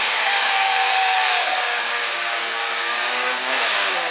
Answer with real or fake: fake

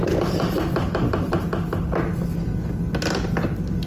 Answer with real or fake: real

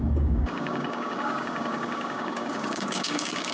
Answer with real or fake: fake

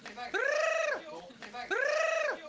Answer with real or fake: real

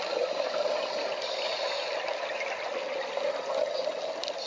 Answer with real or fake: real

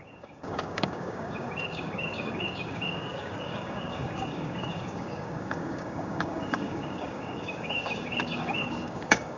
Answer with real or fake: fake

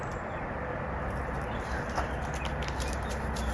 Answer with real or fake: real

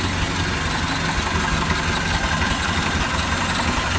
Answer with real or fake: real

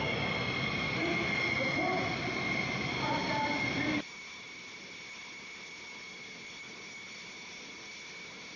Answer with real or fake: real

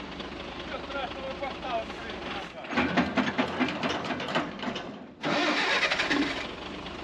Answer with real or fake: real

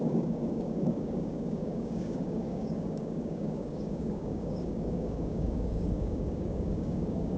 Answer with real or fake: fake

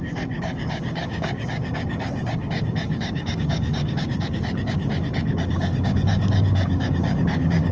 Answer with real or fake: fake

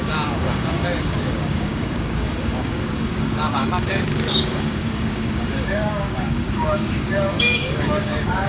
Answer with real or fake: fake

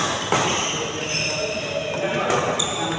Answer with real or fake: real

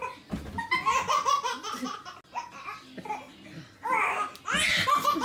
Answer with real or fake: real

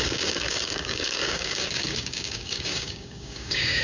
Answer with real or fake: fake